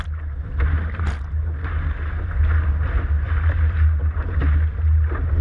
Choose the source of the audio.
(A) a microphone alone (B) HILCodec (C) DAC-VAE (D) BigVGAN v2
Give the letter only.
A